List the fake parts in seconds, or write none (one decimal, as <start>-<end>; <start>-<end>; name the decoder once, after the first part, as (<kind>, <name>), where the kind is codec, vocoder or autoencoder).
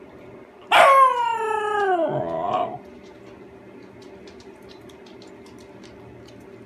none